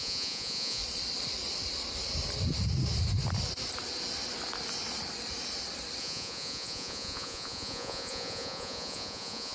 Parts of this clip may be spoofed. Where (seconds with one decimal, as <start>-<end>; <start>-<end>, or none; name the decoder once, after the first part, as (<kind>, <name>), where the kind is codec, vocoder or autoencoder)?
0.0-0.8 (vocoder, Vocos); 6.0-9.5